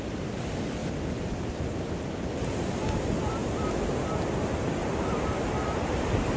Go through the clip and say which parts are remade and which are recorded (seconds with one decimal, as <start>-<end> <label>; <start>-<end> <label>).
0.0-4.8 recorded; 4.8-6.0 remade; 6.0-6.4 recorded